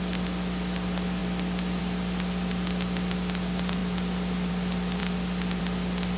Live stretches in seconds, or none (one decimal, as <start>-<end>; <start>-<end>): 0.0-6.2